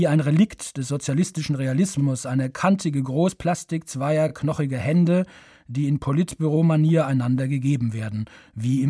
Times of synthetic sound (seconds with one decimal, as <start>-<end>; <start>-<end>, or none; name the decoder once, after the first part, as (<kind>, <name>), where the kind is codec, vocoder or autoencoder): none